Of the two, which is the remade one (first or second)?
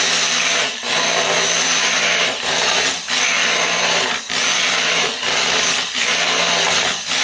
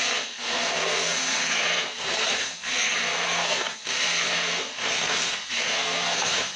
second